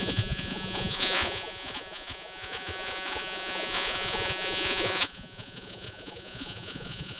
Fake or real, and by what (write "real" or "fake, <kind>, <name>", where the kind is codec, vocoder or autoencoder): fake, vocoder, Vocos